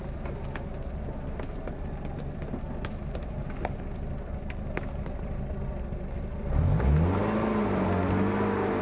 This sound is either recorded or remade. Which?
recorded